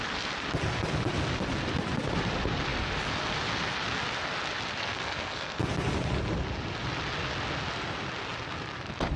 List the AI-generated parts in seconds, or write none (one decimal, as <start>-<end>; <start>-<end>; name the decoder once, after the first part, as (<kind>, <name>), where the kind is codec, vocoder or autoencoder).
4.8-5.6 (codec, SNAC)